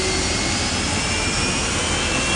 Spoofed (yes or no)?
no